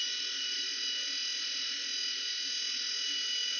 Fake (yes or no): no